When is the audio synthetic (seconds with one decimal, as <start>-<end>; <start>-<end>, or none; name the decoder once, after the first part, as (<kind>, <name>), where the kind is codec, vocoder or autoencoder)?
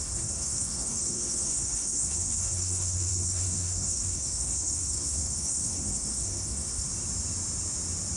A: 0.0-6.9 (codec, SNAC)